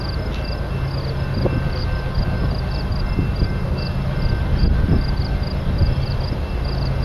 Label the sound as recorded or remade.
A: recorded